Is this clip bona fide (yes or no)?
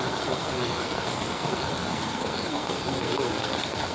no